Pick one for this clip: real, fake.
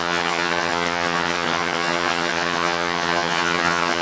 fake